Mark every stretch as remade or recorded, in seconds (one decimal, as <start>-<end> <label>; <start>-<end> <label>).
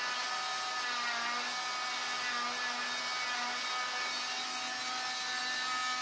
0.0-6.0 recorded